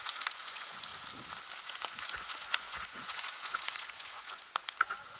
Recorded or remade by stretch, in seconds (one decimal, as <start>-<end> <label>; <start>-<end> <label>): 0.0-0.9 remade; 0.9-1.6 recorded; 1.6-5.2 remade